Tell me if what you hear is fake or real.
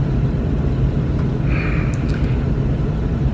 real